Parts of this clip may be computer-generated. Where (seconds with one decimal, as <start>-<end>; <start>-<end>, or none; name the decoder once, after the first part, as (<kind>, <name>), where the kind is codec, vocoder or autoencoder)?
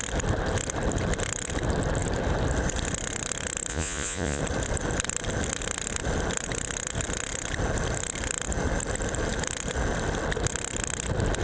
3.7-4.4 (vocoder, Vocos)